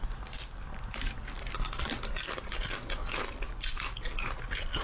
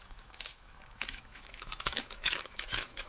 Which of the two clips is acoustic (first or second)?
first